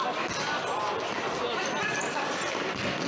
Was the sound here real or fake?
real